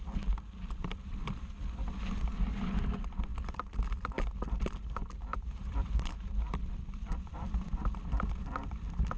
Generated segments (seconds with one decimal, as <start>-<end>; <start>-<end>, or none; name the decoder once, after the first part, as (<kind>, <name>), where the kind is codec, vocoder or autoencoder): 5.0-6.6 (vocoder, BigVGAN v2)